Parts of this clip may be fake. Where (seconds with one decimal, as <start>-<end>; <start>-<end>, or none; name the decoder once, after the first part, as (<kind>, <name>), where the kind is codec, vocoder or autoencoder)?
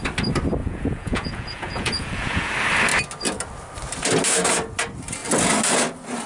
0.6-2.5 (vocoder, Vocos)